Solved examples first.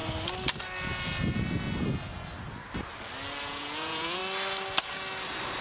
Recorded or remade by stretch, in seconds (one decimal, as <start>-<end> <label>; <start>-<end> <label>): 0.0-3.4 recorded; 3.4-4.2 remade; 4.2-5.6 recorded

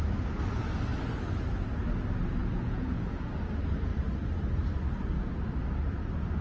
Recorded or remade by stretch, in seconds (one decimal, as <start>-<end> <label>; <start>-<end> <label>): 0.0-2.4 recorded; 2.4-3.3 remade; 3.3-6.4 recorded

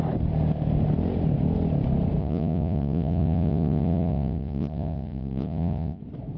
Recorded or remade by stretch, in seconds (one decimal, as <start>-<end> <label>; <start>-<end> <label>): 0.0-2.2 recorded; 2.2-6.0 remade; 6.0-6.4 recorded